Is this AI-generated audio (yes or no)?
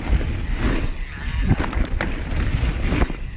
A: no